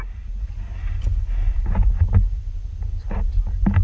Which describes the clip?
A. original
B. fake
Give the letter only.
A